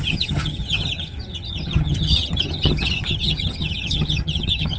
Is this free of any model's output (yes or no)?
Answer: no